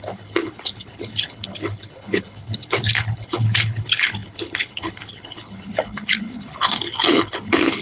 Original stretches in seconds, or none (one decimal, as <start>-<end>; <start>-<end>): none